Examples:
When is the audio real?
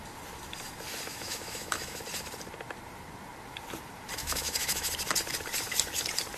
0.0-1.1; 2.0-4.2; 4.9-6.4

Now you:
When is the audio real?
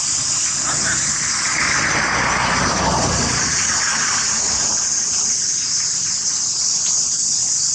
0.0-7.7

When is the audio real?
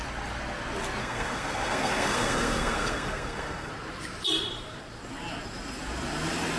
0.0-1.0; 3.7-6.6